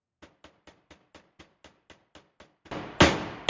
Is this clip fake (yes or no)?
no